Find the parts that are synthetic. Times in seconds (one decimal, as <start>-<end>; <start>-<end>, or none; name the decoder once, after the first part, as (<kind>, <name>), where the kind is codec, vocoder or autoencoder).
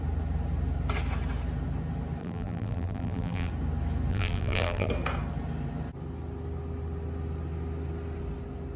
2.2-3.5 (vocoder, BigVGAN v2); 4.1-4.9